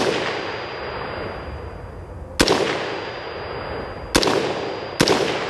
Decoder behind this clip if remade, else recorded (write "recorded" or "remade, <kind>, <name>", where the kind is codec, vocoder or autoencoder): recorded